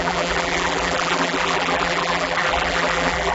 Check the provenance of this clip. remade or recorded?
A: remade